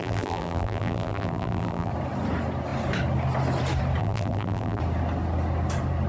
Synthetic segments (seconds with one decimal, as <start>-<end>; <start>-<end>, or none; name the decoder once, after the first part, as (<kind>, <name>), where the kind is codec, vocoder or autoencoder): 0.0-1.9 (vocoder, BigVGAN v2); 4.0-4.8